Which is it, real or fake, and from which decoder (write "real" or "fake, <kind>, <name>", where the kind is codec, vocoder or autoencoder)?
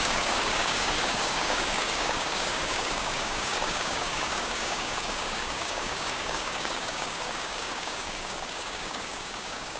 fake, codec, DAC